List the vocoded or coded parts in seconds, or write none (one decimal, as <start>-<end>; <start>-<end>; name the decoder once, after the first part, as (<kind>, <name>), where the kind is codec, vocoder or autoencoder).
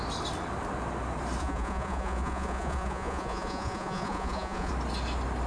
1.4-4.7 (vocoder, Vocos)